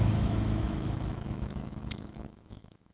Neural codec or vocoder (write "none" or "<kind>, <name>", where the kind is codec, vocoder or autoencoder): autoencoder, DAC-VAE